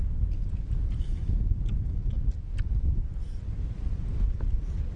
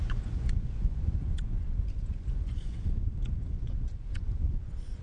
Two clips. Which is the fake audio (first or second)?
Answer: second